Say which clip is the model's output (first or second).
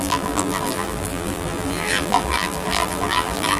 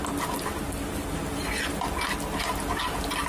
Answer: first